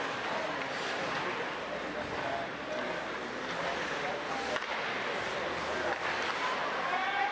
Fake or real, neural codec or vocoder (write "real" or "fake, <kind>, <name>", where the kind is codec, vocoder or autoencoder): real